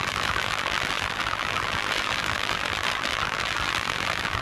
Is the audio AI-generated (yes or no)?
yes